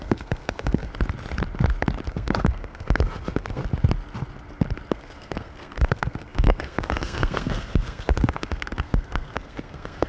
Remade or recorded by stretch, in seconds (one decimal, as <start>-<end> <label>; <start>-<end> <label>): 0.0-0.9 remade; 0.9-2.1 recorded; 2.1-3.6 remade; 3.6-4.9 recorded; 4.9-10.1 remade